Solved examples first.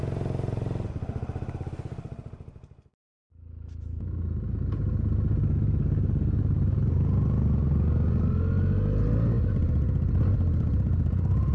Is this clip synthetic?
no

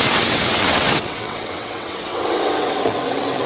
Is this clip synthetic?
yes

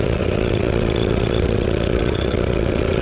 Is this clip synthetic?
yes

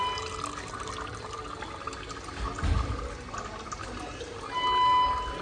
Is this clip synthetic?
no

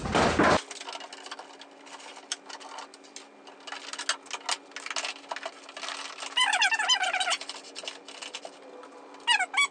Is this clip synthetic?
no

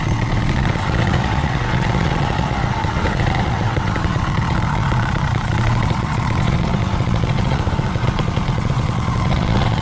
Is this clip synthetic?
yes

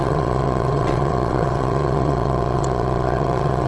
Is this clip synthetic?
yes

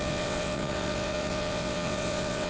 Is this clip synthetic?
yes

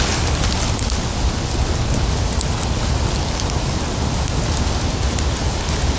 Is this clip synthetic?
no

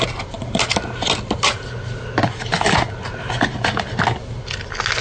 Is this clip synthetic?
no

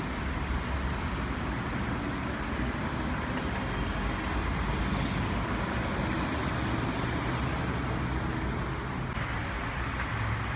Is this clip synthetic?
no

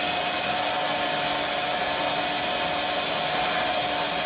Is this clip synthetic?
no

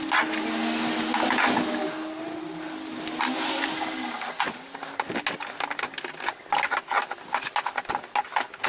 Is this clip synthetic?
no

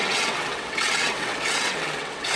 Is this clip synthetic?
yes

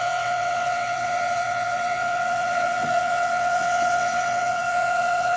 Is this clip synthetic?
yes